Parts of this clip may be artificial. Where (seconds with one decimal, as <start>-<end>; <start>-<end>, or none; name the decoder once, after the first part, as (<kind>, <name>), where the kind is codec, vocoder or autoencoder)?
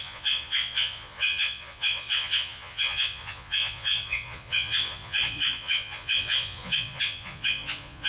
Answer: 0.0-8.1 (vocoder, Vocos)